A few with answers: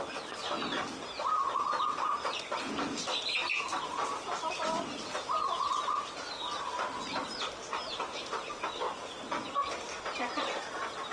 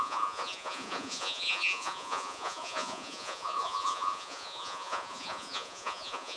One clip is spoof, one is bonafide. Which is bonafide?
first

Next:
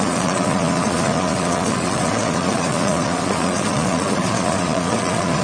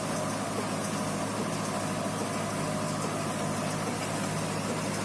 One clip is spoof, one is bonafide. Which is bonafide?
second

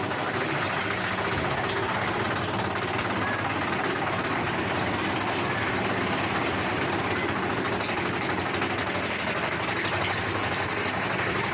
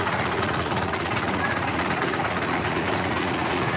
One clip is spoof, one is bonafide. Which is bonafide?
first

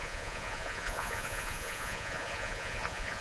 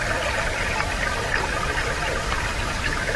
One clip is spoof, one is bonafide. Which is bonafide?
second